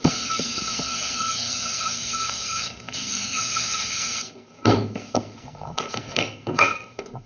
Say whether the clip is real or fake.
fake